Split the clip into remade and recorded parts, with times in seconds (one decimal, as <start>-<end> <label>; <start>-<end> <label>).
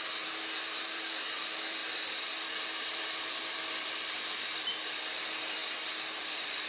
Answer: 0.0-5.6 remade; 5.6-6.2 recorded; 6.2-6.7 remade